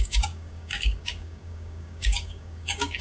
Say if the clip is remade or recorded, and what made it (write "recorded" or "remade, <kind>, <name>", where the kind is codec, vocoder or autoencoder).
remade, codec, DAC